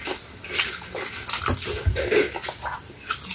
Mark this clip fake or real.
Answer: real